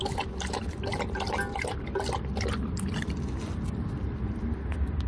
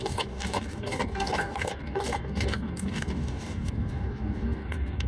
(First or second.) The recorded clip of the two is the first